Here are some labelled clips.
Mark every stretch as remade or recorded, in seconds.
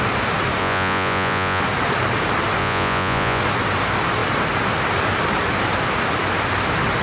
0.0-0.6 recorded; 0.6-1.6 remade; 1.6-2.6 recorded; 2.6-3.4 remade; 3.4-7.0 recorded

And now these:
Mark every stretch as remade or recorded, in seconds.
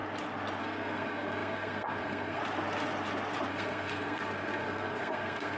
0.0-0.6 recorded; 0.6-2.4 remade; 2.4-3.5 recorded; 3.5-5.6 remade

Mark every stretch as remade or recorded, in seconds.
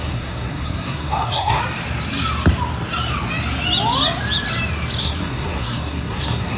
0.0-1.6 remade; 1.6-5.0 recorded; 5.0-6.6 remade